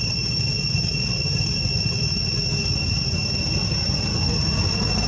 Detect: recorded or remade recorded